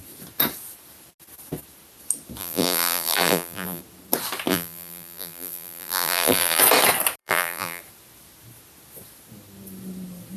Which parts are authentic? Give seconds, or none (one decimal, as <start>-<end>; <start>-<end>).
0.0-2.4; 3.8-4.5; 6.6-7.2; 7.8-10.4